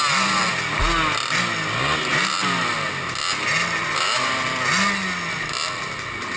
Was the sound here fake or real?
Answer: real